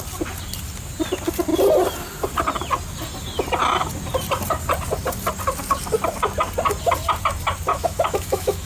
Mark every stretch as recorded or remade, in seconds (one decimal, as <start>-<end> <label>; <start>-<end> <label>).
0.0-7.7 recorded; 7.7-8.7 remade

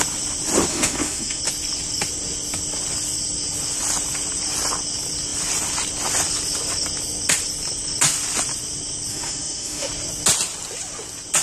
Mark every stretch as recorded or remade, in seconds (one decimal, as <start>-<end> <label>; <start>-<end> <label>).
0.0-0.7 recorded; 0.7-1.4 remade; 1.4-9.1 recorded; 9.1-9.9 remade; 9.9-11.4 recorded